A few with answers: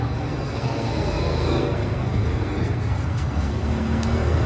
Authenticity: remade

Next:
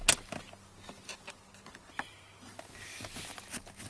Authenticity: recorded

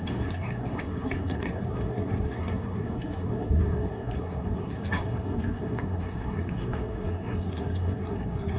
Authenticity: remade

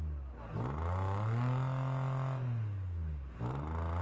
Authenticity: recorded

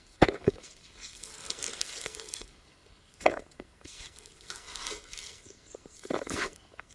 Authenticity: remade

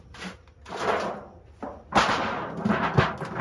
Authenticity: recorded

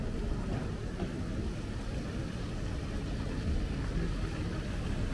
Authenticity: recorded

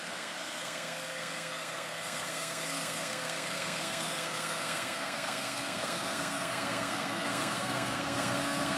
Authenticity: remade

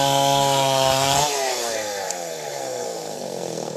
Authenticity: remade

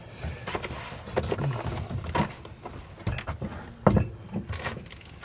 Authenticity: recorded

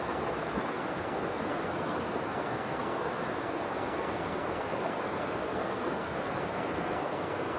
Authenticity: remade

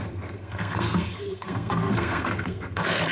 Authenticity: remade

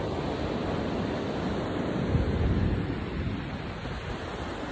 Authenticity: recorded